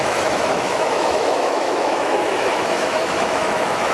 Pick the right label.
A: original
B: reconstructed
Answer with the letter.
B